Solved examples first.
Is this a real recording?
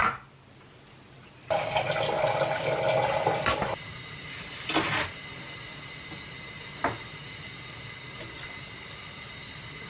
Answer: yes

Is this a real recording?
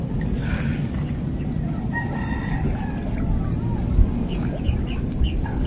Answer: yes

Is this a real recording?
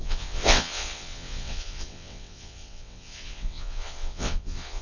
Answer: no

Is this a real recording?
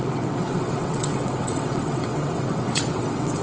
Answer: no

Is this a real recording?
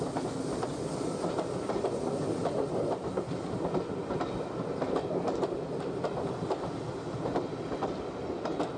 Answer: yes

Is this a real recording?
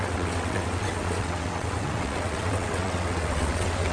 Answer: no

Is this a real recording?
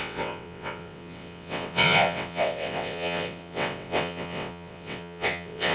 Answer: no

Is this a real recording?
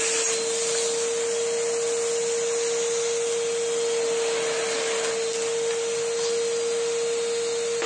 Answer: yes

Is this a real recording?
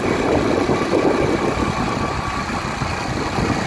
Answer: yes